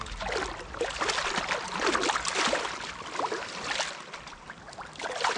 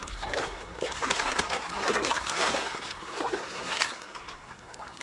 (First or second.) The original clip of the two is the first